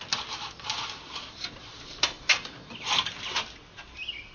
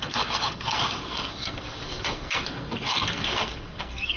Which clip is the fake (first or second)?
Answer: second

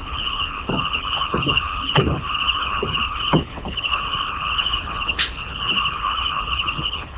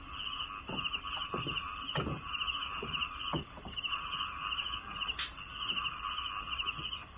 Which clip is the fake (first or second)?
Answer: first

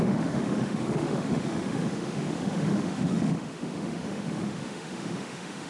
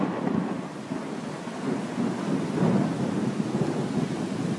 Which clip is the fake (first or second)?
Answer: first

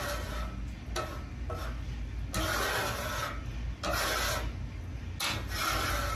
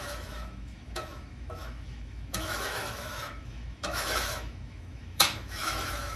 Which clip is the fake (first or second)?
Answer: second